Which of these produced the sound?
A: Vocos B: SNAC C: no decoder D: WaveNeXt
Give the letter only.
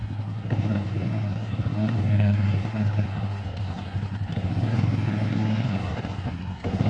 B